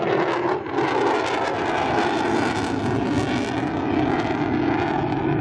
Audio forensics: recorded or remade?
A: recorded